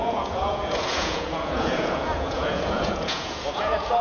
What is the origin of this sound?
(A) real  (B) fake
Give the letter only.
B